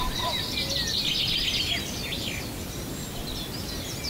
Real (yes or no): yes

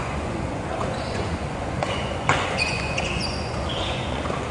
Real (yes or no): no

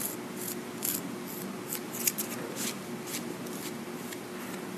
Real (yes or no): yes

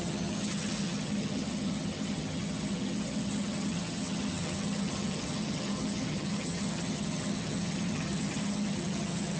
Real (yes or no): no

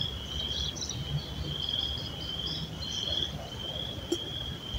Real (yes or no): no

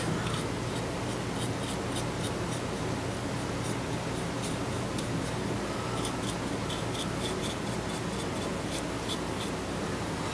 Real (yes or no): yes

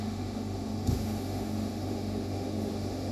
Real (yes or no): no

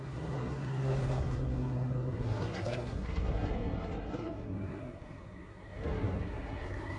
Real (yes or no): no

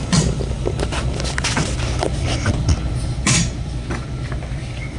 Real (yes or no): yes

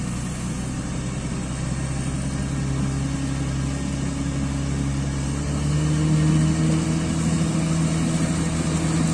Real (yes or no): yes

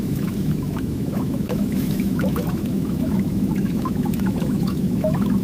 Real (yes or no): no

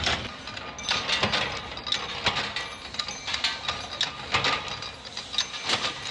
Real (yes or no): yes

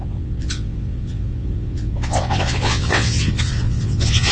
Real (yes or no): no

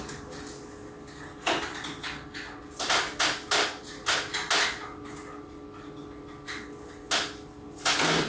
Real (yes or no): yes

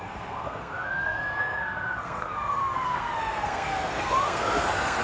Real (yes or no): no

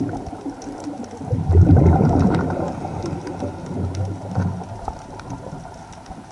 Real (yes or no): yes